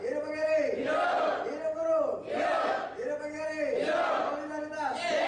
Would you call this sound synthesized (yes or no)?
no